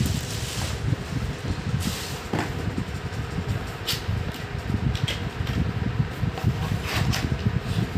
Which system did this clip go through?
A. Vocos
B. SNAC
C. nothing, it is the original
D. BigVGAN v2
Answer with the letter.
C